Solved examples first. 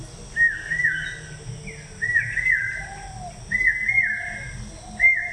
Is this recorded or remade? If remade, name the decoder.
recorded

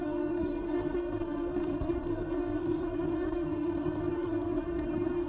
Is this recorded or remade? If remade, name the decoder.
remade, codec, SNAC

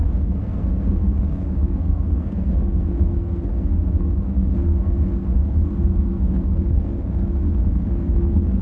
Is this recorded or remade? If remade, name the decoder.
remade, codec, SNAC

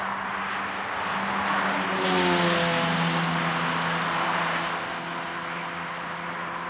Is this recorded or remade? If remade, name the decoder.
recorded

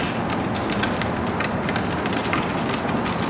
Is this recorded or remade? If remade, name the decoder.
recorded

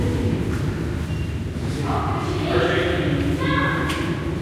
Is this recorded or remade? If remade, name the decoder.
recorded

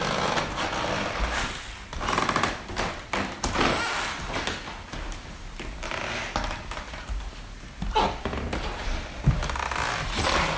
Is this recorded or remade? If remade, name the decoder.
recorded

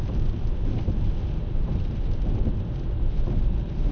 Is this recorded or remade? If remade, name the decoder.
remade, vocoder, BigVGAN v2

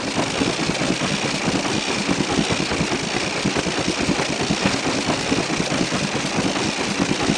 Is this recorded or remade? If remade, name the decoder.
recorded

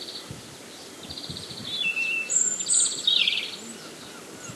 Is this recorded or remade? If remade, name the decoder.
recorded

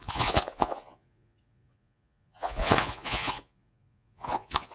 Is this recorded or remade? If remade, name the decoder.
remade, vocoder, Vocos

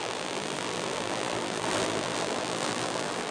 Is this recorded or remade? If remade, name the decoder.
remade, vocoder, BigVGAN v2